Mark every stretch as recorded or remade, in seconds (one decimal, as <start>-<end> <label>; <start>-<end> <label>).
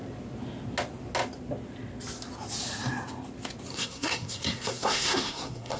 0.0-3.7 recorded; 3.7-5.8 remade